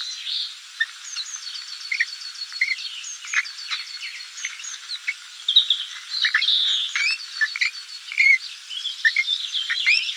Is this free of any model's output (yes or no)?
no